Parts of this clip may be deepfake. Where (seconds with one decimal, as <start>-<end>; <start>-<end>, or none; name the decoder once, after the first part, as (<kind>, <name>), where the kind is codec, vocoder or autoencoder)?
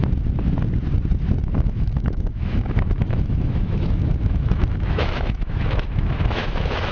1.4-6.9 (autoencoder, DAC-VAE)